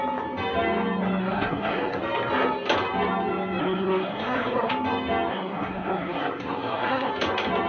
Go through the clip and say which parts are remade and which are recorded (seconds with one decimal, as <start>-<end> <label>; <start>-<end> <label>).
0.0-1.2 recorded; 1.2-2.0 remade; 2.0-3.6 recorded; 3.6-4.7 remade; 4.7-5.3 recorded; 5.3-7.1 remade; 7.1-7.7 recorded